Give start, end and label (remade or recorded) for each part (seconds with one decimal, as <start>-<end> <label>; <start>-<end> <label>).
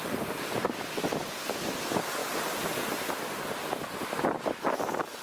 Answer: 0.0-5.2 recorded